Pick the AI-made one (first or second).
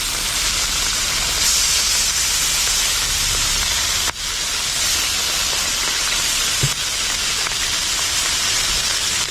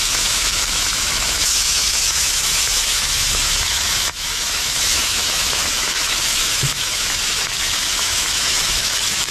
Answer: second